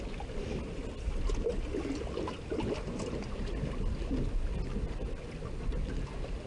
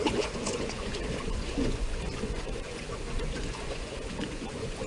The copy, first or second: second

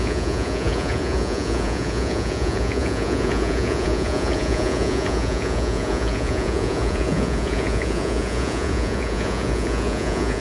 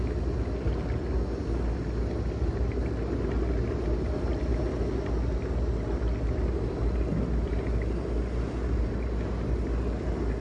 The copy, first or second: first